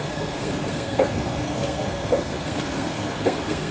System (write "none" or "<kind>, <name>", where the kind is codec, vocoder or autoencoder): codec, SNAC